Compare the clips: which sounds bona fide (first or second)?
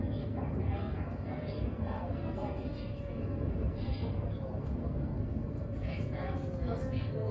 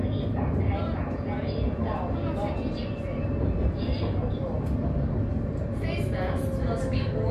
second